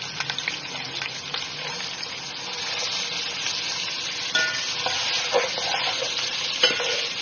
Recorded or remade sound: recorded